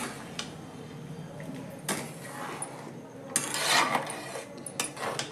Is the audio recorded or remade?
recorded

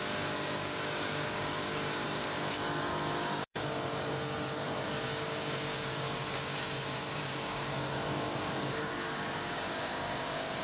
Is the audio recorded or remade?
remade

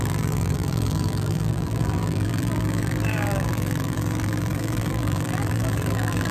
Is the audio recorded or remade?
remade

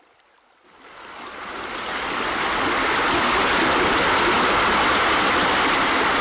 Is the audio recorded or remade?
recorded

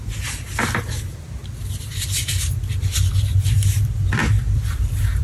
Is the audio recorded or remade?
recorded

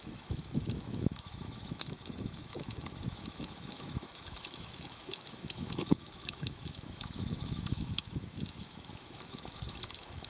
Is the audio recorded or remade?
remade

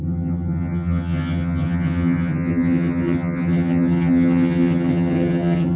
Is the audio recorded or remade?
remade